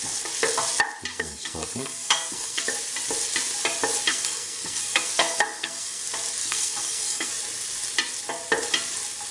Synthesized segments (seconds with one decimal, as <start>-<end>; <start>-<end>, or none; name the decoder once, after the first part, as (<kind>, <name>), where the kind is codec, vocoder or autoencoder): 1.1-2.6 (codec, SNAC); 4.1-6.0; 6.4-7.3